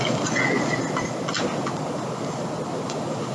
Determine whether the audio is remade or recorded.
recorded